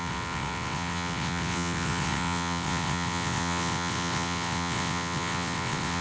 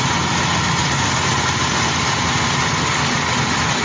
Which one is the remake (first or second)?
first